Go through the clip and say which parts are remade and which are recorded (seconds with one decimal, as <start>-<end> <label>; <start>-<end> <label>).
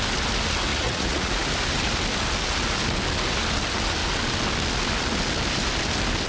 0.0-0.7 recorded; 0.7-1.3 remade; 1.3-6.3 recorded